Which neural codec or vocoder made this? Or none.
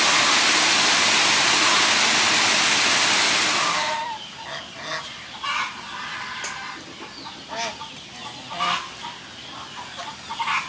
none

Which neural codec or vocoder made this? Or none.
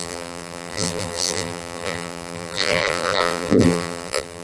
vocoder, BigVGAN v2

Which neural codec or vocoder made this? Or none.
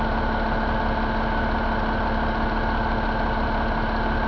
none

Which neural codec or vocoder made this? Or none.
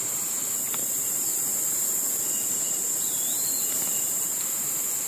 vocoder, BigVGAN v2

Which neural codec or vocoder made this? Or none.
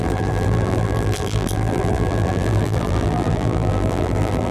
vocoder, BigVGAN v2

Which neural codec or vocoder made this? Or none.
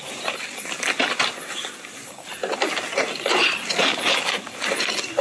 none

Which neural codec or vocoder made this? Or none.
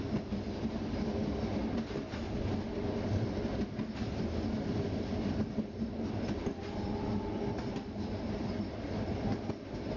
none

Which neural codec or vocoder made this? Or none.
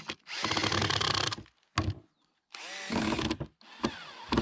none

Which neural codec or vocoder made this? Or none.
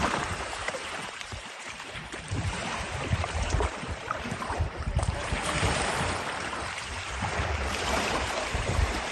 vocoder, BigVGAN v2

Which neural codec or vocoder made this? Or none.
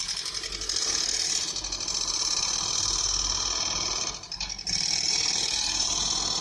none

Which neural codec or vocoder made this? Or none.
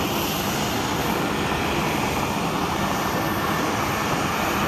none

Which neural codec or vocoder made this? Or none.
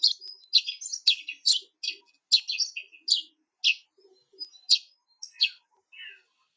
none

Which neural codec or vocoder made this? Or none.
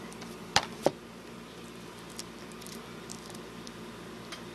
vocoder, BigVGAN v2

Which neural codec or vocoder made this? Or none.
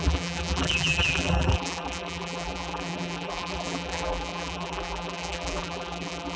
vocoder, BigVGAN v2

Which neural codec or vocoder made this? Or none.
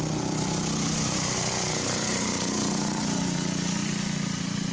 none